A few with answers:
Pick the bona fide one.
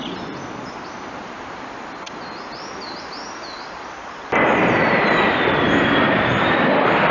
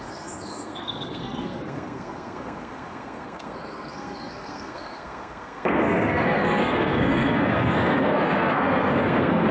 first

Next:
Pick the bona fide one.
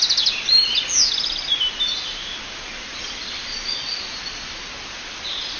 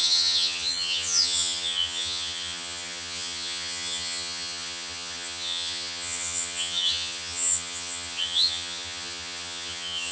first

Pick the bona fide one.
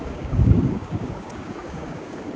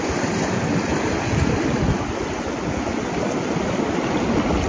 second